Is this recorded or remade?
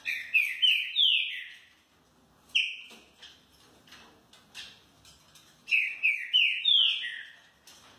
recorded